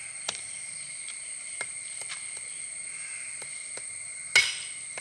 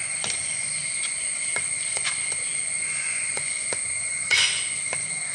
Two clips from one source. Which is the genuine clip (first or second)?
first